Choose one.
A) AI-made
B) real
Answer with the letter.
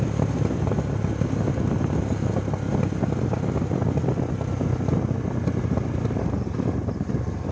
B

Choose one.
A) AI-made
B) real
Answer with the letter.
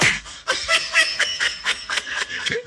A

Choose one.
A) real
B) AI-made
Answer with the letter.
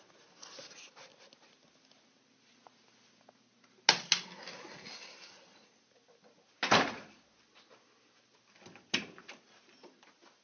A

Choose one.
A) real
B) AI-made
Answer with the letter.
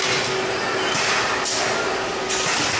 A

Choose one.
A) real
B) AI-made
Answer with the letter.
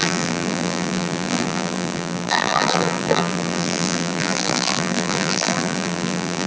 B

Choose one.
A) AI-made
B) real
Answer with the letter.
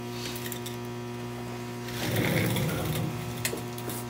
B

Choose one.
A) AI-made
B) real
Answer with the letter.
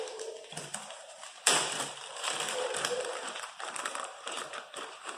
A